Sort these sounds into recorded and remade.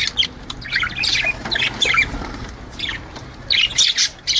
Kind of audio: recorded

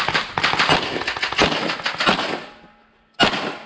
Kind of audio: recorded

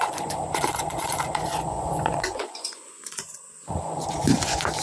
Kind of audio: remade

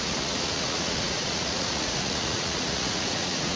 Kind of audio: remade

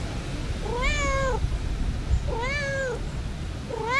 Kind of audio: recorded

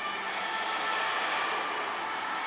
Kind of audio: recorded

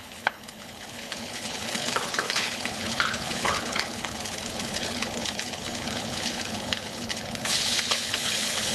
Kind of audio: remade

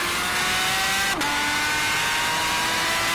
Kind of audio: recorded